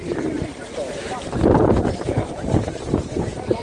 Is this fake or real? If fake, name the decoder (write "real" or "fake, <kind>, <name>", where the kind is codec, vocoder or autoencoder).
fake, vocoder, BigVGAN v2